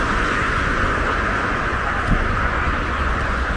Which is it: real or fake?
fake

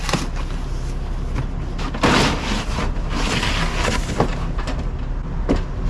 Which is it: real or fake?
real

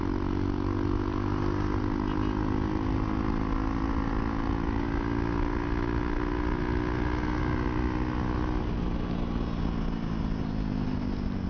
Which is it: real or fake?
real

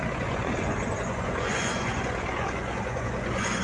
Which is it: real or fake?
fake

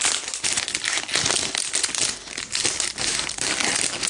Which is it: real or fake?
real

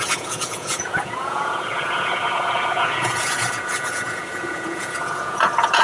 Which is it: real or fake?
fake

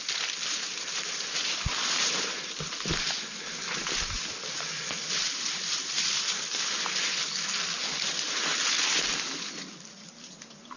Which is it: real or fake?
real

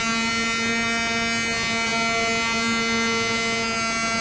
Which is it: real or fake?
real